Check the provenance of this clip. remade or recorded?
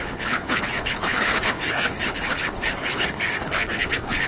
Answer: remade